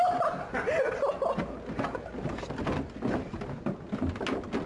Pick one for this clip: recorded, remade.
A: recorded